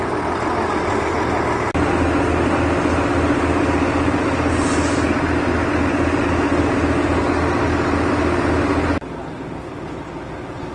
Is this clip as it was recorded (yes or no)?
yes